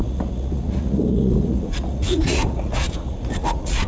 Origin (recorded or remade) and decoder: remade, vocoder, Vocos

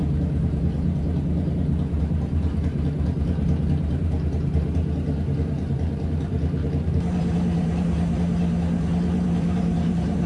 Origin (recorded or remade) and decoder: remade, vocoder, BigVGAN v2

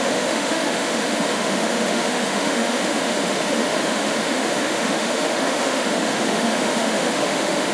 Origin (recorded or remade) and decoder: remade, autoencoder, DAC-VAE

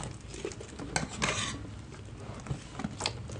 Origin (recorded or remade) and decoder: recorded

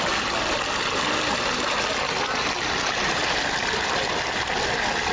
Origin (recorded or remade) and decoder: recorded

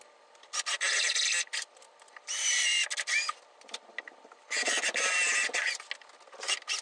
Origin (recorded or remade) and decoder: recorded